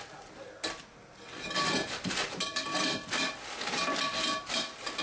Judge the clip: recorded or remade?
recorded